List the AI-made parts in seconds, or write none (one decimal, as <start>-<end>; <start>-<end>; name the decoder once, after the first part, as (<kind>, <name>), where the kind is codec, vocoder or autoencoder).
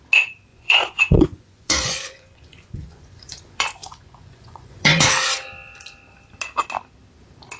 0.5-5.1 (vocoder, Vocos)